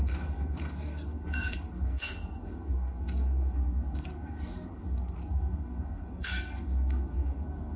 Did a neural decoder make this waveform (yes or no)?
yes